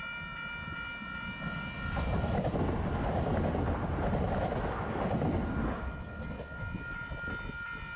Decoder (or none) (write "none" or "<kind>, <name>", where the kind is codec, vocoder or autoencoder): none